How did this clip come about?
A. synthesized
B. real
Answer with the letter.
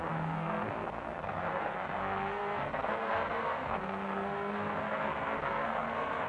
A